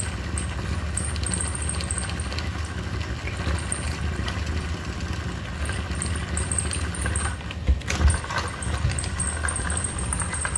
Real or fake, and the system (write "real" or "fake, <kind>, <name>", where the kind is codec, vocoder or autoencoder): real